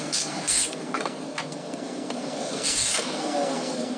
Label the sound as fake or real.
fake